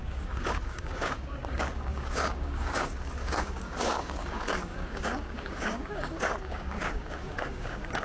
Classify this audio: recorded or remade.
remade